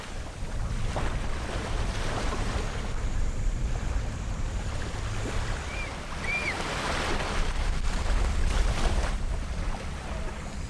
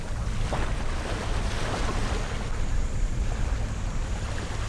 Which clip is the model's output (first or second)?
first